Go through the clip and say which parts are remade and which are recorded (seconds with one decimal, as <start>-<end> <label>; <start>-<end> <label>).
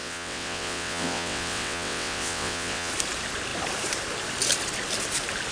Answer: 0.0-2.9 remade; 2.9-5.5 recorded